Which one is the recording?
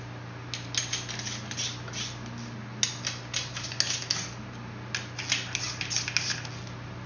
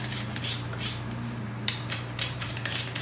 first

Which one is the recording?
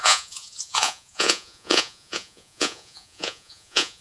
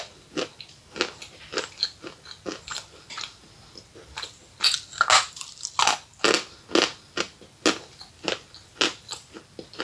second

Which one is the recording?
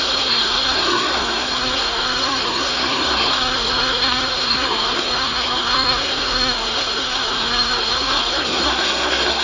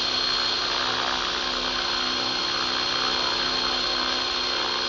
second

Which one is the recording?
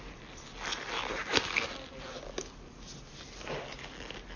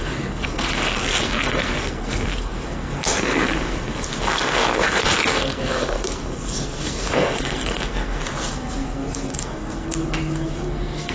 first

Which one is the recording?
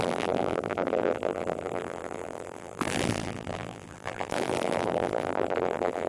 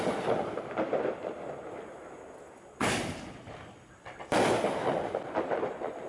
second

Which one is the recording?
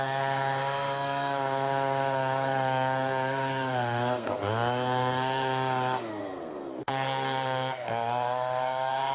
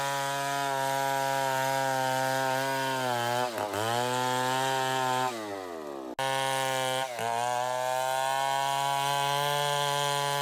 second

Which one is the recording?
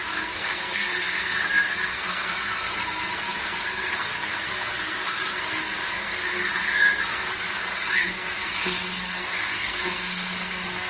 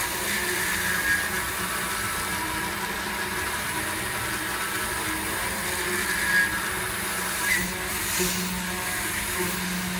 second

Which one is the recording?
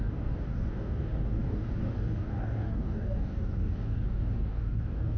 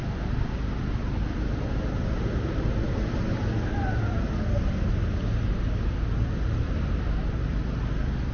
second